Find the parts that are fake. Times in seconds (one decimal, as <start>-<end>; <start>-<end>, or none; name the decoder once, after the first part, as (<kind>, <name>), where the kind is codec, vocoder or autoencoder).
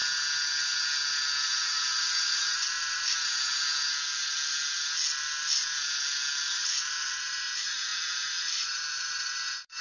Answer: 1.4-3.5 (vocoder, BigVGAN v2); 6.5-9.8